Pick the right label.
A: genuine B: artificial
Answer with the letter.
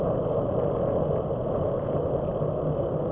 A